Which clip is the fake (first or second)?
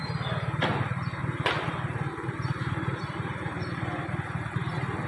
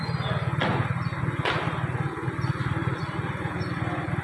first